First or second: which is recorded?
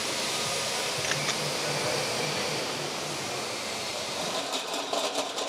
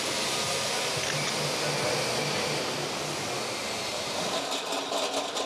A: second